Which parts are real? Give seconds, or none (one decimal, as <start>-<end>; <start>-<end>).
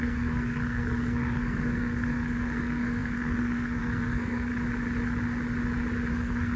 4.5-6.1